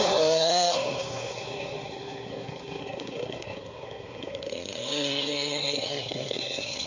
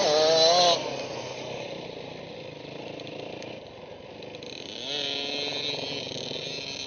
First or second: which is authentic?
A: second